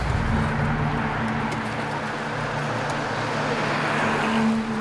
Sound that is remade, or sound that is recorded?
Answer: recorded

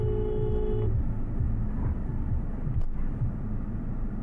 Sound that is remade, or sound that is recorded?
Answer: recorded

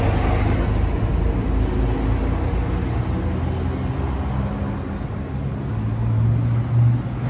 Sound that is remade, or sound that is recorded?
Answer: recorded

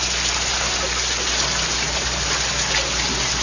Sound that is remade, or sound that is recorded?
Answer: recorded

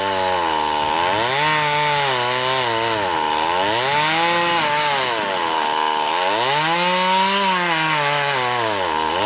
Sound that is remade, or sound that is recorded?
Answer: recorded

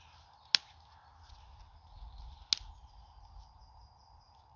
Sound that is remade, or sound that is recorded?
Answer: recorded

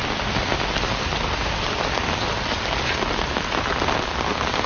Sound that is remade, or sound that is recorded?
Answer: recorded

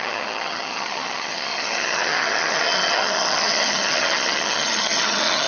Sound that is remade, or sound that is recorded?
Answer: remade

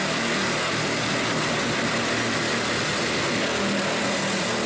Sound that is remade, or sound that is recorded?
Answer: recorded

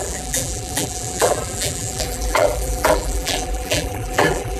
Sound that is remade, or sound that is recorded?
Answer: remade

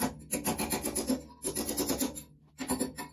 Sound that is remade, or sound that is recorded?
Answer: recorded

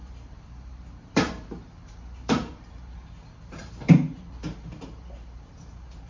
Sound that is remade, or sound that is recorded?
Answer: remade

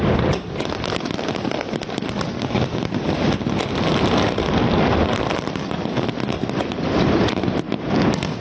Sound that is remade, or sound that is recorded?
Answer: recorded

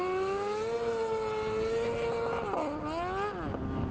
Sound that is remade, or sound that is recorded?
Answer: recorded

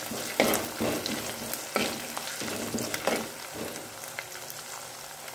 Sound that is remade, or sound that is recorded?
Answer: recorded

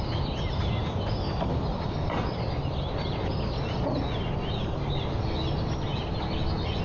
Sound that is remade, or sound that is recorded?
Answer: recorded